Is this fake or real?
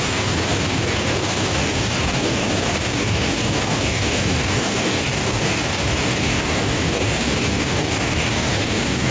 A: fake